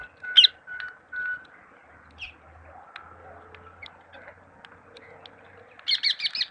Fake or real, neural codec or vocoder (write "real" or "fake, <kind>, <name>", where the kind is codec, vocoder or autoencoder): real